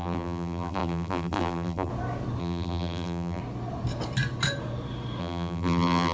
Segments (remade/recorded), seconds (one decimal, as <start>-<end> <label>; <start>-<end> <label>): 0.0-1.9 remade; 1.9-2.4 recorded; 2.4-3.4 remade; 3.4-5.2 recorded; 5.2-6.1 remade